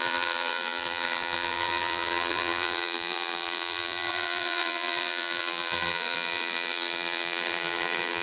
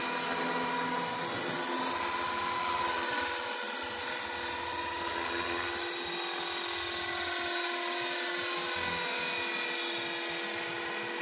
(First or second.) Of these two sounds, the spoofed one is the first